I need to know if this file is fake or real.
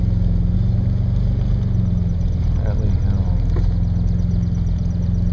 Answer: real